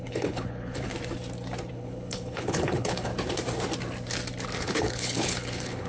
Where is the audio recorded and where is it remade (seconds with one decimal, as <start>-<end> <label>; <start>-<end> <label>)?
0.0-0.9 remade; 0.9-1.7 recorded; 1.7-3.1 remade; 3.1-4.6 recorded; 4.6-5.9 remade